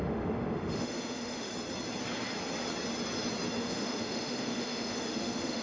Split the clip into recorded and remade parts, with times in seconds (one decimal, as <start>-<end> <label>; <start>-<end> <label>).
0.0-1.5 remade; 1.5-3.6 recorded; 3.6-5.6 remade